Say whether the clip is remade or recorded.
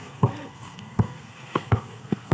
remade